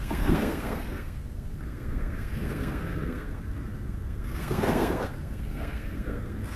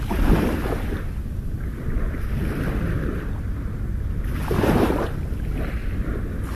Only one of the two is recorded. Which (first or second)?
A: second